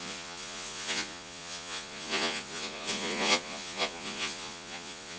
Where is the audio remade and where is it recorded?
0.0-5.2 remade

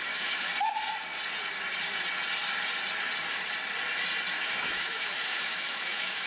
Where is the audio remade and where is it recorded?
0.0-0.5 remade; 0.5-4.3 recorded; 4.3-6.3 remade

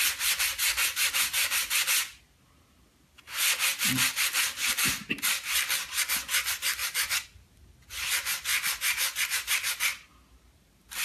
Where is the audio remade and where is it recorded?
0.0-6.8 recorded; 6.8-7.6 remade; 7.6-11.0 recorded

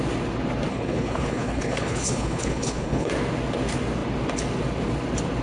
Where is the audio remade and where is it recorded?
0.0-0.7 recorded; 0.7-3.1 remade; 3.1-5.4 recorded